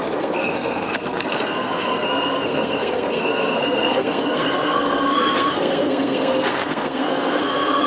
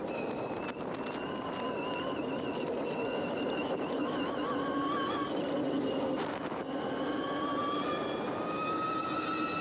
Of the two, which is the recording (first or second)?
second